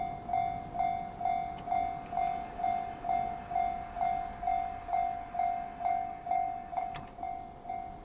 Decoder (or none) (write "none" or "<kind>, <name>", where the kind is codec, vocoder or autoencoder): none